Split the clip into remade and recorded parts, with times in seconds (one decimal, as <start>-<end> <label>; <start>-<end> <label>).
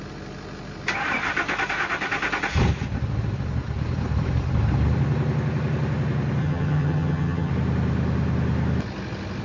0.0-6.4 recorded; 6.4-7.5 remade; 7.5-9.4 recorded